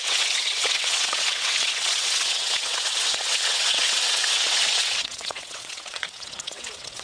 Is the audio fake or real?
fake